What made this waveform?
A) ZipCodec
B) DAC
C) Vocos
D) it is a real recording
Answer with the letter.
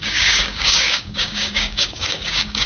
B